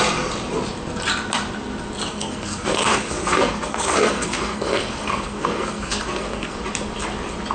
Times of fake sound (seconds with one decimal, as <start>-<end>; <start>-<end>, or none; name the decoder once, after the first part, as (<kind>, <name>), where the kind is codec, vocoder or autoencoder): 2.1-6.6 (codec, SNAC)